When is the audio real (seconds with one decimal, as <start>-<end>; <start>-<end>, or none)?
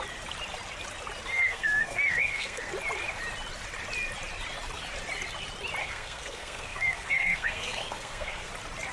0.0-1.3; 2.7-5.8; 8.5-8.9